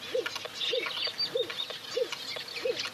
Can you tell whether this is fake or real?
real